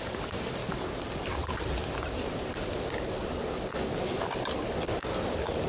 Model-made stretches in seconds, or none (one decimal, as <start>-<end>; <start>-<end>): none